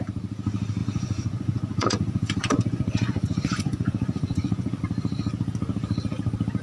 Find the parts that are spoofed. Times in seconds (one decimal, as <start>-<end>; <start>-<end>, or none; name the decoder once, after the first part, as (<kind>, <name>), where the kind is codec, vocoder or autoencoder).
0.8-4.8 (vocoder, Vocos)